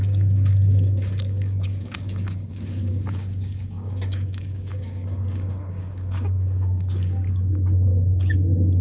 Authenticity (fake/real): fake